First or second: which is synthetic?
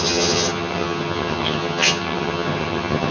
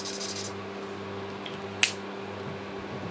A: first